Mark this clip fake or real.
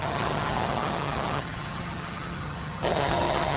fake